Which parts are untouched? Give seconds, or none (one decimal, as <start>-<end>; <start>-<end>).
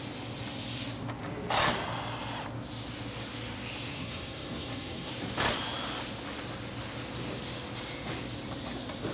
0.0-3.9; 5.1-9.1